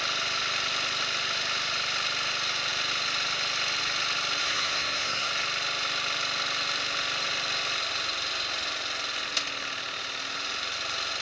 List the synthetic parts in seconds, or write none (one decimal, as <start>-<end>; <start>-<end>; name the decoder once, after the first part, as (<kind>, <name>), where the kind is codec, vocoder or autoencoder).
4.4-5.3 (codec, SNAC)